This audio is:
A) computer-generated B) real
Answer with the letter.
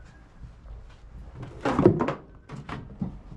B